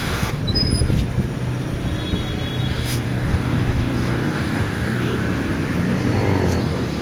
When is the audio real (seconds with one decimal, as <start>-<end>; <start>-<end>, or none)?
0.4-2.7; 5.2-6.6